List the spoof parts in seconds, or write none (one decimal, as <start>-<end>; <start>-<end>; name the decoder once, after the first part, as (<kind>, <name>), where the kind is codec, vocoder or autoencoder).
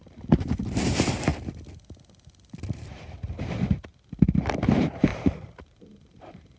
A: 0.0-1.3 (vocoder, BigVGAN v2); 2.7-3.9; 4.6-6.6